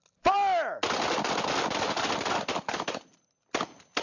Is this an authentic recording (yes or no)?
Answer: yes